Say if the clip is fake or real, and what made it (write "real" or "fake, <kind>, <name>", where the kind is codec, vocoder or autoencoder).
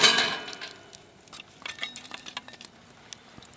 real